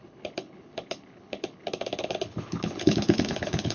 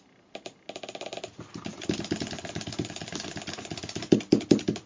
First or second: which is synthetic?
first